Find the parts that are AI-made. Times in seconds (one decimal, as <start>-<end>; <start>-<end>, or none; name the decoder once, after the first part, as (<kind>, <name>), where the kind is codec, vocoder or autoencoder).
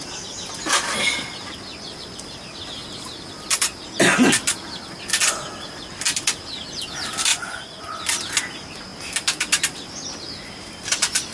1.7-2.2 (vocoder, Vocos); 7.3-8.0